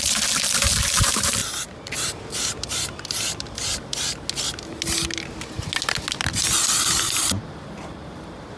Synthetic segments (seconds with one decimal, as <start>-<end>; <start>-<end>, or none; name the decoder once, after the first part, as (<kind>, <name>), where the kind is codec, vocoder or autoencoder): 0.0-3.6 (vocoder, BigVGAN v2); 6.2-8.6